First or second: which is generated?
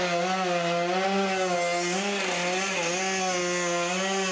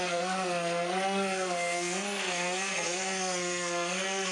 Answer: second